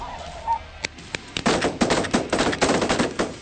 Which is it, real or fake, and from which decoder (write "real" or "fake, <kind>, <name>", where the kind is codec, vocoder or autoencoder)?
real